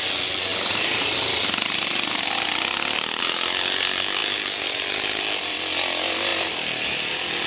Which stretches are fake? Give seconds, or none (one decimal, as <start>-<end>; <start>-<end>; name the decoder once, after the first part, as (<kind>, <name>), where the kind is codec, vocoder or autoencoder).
none